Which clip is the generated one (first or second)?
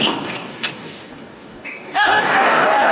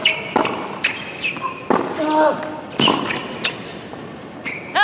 first